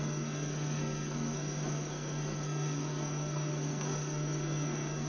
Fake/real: fake